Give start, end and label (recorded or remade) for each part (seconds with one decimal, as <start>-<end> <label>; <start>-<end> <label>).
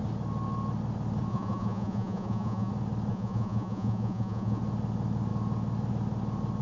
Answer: 0.0-1.3 recorded; 1.3-2.7 remade; 2.7-3.1 recorded; 3.1-4.6 remade; 4.6-6.6 recorded